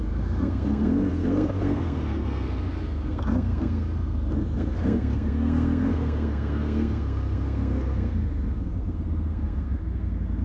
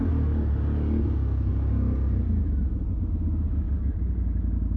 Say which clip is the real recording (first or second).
second